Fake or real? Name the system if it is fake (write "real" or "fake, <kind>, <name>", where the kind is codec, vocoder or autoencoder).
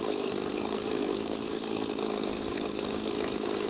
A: fake, codec, SNAC